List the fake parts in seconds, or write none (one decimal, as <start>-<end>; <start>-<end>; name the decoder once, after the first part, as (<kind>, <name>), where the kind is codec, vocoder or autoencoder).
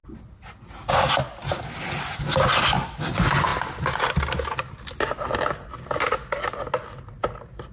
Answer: none